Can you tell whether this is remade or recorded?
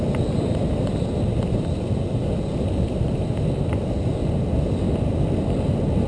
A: recorded